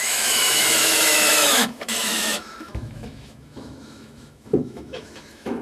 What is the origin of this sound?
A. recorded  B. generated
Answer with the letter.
B